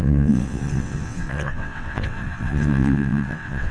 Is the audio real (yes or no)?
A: no